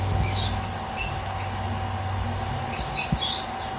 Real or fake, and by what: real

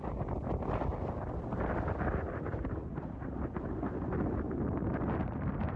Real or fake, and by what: real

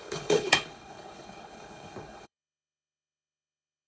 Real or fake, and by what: fake, codec, HILCodec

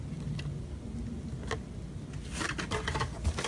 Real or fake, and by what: real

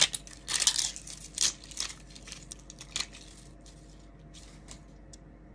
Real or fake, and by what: real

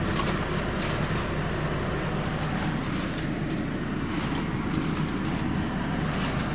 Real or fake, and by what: real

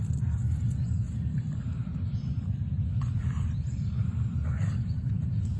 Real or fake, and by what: real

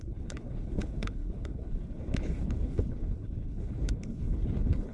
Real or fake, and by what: fake, codec, HILCodec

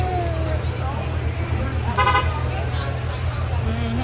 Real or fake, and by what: real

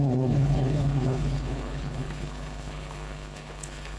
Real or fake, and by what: fake, codec, HILCodec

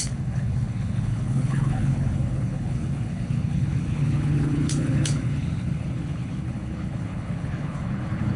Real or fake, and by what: fake, codec, HILCodec